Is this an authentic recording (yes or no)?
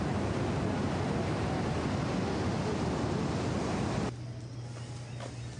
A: yes